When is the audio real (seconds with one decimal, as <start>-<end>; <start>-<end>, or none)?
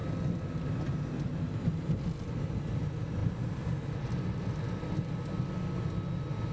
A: 0.0-6.5